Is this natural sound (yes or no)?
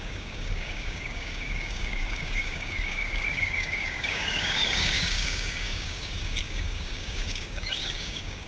no